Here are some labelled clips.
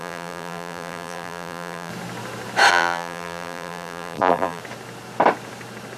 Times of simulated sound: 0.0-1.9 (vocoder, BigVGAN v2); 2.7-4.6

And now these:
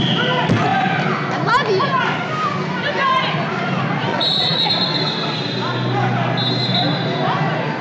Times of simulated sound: 4.1-4.7 (vocoder, Vocos)

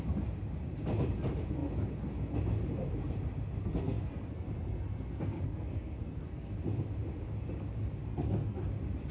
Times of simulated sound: 3.6-6.5 (codec, SNAC); 8.1-8.6

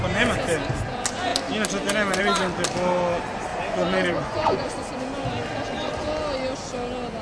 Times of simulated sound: 3.5-4.7 (vocoder, Vocos)

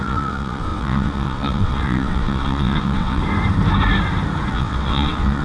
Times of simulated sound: 0.0-3.2 (vocoder, WaveNeXt); 4.5-5.4

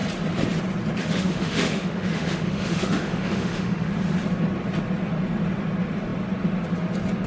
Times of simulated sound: 1.0-3.9 (autoencoder, DAC-VAE)

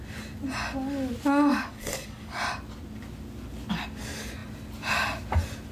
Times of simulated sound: 1.5-2.4 (codec, DAC)